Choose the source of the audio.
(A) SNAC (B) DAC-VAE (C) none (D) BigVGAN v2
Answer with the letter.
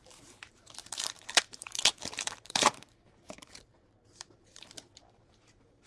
D